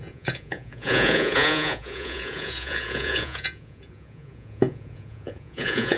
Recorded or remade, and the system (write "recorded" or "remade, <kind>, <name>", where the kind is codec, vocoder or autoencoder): remade, vocoder, Vocos